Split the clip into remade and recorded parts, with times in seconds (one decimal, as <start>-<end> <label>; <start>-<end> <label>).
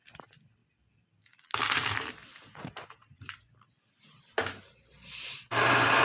0.0-2.3 recorded; 2.3-6.0 remade